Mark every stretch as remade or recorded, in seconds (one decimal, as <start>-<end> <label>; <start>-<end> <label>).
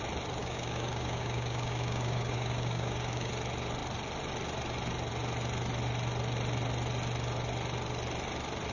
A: 0.0-0.4 recorded; 0.4-3.3 remade; 3.3-8.7 recorded